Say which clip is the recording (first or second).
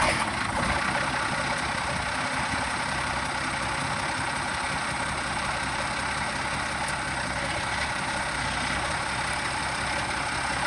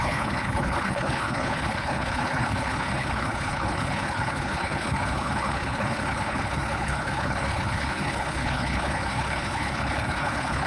first